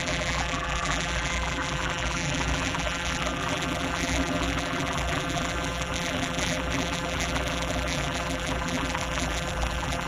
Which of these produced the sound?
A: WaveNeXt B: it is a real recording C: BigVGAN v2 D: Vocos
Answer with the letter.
C